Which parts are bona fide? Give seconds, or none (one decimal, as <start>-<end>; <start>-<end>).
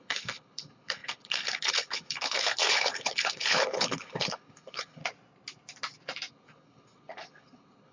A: 5.0-6.3